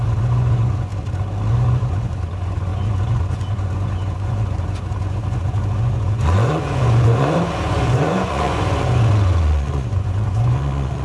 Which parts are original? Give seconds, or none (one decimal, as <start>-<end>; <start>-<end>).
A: 0.9-1.5

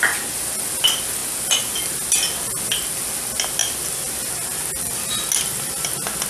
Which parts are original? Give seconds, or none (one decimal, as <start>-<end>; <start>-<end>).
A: 0.0-6.3

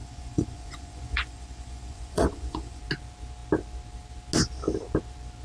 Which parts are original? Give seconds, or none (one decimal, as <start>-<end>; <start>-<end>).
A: 2.8-5.4

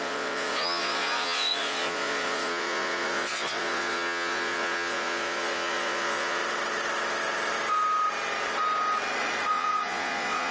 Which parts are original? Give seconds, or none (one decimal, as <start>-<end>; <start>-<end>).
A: 6.4-9.5

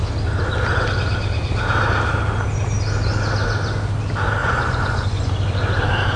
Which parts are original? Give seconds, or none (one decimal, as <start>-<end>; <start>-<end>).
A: 0.0-4.4; 5.3-6.2

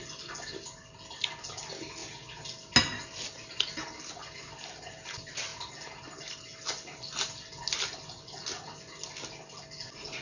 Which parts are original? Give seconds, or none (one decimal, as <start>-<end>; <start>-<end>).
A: 0.0-10.2

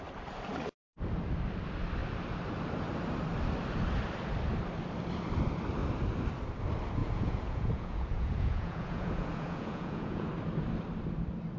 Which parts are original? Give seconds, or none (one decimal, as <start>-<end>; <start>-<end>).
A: 0.0-7.0; 10.3-11.6

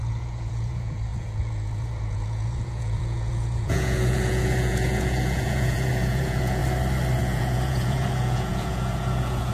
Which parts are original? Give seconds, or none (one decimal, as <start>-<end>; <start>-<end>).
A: 6.6-7.2